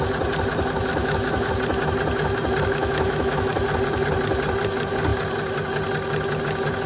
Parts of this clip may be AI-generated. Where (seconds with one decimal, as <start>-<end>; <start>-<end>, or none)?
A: 0.9-1.5; 2.8-3.5